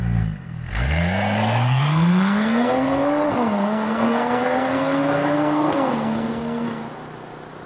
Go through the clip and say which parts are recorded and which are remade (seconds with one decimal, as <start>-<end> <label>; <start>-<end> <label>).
0.0-6.8 remade; 6.8-7.7 recorded